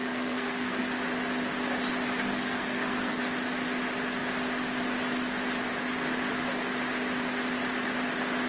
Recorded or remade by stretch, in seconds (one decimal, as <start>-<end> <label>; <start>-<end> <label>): 0.0-0.8 remade; 0.8-2.3 recorded; 2.3-3.2 remade; 3.2-8.5 recorded